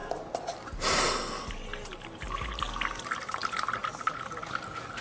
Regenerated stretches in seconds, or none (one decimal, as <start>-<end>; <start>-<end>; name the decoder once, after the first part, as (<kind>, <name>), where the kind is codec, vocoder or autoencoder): none